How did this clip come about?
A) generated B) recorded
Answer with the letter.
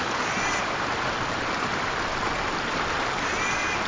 A